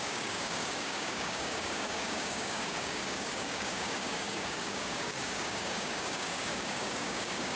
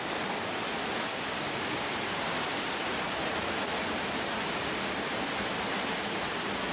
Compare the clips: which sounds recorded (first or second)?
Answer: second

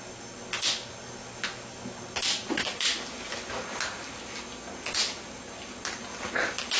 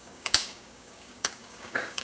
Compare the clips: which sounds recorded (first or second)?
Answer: first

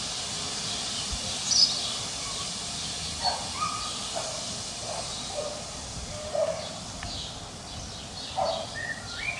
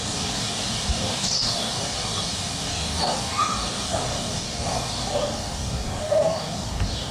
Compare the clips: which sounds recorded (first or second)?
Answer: first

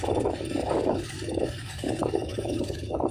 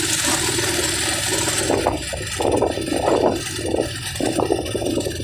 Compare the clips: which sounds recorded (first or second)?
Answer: second